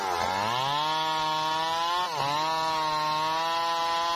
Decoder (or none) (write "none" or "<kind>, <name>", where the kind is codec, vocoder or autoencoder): none